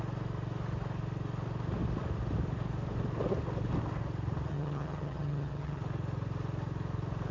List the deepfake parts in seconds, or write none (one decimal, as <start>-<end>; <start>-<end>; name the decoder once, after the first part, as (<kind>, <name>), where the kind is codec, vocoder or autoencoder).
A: 4.5-5.8 (vocoder, HiFi-GAN)